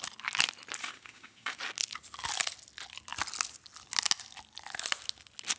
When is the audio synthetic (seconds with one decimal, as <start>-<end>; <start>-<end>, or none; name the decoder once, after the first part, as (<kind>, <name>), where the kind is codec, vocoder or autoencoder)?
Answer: 0.8-1.6 (autoencoder, DAC-VAE)